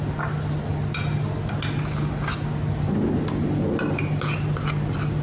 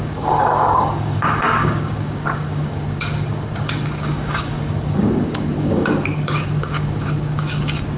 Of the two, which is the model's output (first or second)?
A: second